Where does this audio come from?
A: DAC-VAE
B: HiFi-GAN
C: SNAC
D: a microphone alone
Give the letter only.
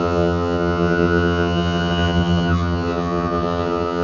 B